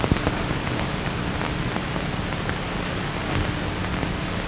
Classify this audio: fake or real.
real